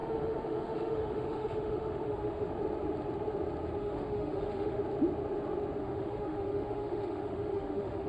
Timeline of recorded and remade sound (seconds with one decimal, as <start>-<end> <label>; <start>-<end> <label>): 0.0-2.5 remade; 2.5-3.8 recorded; 3.8-4.8 remade; 4.8-5.8 recorded; 5.8-8.1 remade